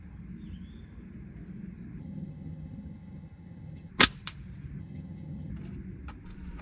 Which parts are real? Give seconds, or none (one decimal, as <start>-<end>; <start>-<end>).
0.0-2.0; 3.9-4.8; 5.5-6.6